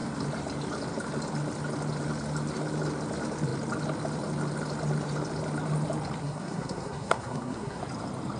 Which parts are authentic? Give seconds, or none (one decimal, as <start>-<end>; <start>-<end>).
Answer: 0.0-6.2; 7.8-8.4

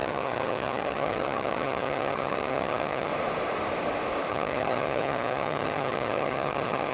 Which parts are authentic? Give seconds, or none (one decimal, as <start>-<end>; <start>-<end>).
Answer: 3.1-4.3

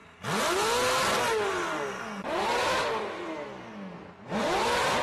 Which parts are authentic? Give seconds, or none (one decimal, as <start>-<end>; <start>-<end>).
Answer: 0.0-3.0; 3.5-4.0

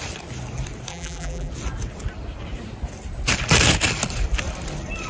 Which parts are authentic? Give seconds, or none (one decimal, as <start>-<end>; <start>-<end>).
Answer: 0.0-0.9; 1.5-5.1

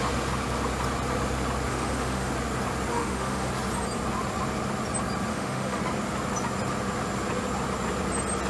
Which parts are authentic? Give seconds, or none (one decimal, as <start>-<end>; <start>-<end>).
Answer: 0.0-1.7; 2.3-2.9; 3.5-5.3; 5.8-8.5

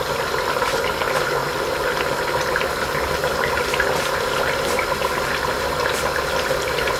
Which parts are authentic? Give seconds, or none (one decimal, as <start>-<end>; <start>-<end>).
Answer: 0.0-7.0

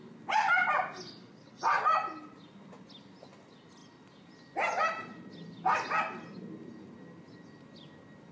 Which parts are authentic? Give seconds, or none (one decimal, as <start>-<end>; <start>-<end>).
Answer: 0.0-1.2; 1.8-8.3